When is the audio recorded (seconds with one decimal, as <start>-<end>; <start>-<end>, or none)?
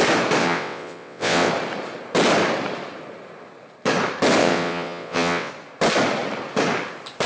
0.0-0.4; 1.5-4.4; 5.5-7.3